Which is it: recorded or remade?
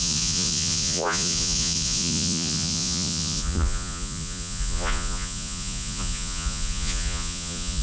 remade